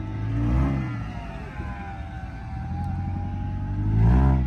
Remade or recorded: recorded